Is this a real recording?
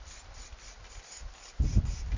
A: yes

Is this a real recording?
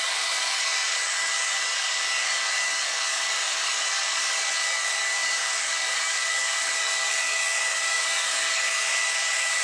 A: no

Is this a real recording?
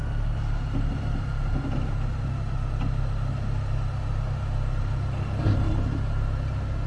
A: yes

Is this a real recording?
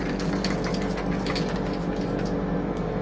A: yes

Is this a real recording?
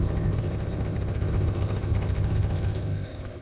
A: no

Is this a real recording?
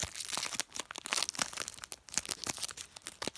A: yes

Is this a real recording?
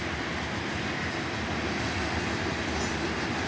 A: yes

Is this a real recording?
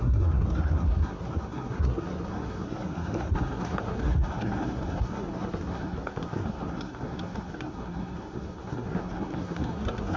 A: no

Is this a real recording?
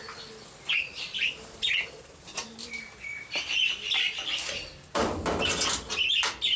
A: yes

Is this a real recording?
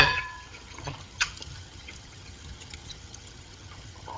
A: no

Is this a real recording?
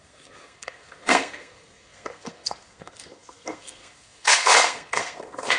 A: no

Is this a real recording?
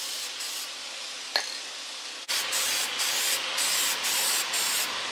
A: yes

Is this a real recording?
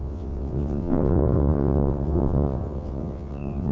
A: no